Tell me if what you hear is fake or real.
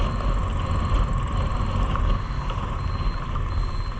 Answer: real